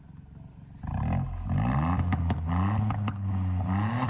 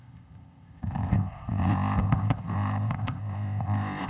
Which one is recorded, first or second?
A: first